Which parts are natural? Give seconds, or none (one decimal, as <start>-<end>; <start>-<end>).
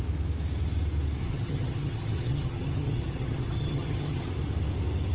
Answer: 0.0-1.2; 4.3-5.1